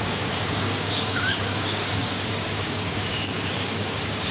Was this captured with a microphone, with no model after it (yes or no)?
no